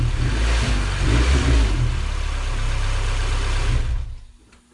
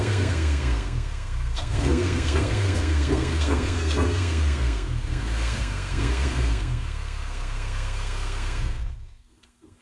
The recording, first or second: first